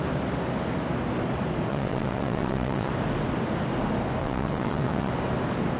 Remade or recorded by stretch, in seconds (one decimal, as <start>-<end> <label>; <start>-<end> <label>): 0.0-1.7 recorded; 1.7-2.9 remade; 2.9-4.2 recorded; 4.2-5.1 remade; 5.1-5.8 recorded